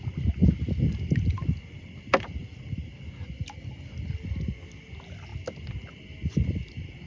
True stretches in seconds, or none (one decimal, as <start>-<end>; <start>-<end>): 0.0-7.1